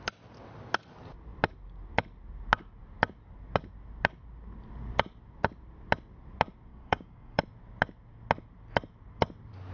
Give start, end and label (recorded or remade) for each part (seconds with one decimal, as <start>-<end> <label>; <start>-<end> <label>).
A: 0.0-6.7 recorded; 6.7-7.4 remade; 7.4-9.7 recorded